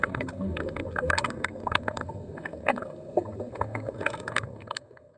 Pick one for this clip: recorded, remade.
remade